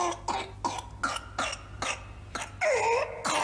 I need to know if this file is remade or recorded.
recorded